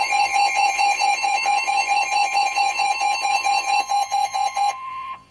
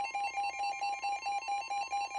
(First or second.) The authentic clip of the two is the second